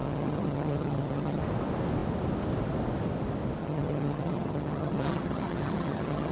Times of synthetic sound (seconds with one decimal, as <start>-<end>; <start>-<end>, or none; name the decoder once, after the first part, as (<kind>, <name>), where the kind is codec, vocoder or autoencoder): 0.0-1.4 (vocoder, HiFi-GAN); 3.6-6.3